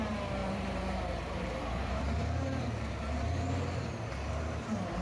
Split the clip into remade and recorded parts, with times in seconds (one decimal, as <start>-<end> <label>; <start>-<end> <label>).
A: 0.0-0.4 recorded; 0.4-3.4 remade; 3.4-5.0 recorded